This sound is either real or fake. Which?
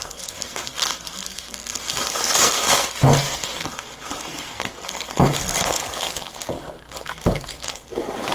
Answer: fake